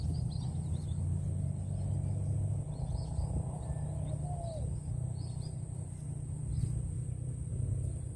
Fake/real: real